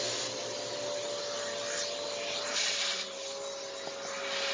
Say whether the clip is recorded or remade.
recorded